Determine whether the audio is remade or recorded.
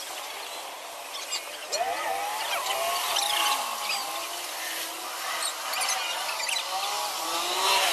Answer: recorded